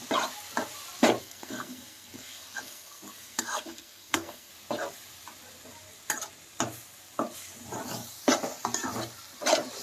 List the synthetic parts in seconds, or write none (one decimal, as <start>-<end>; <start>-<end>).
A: 1.2-4.5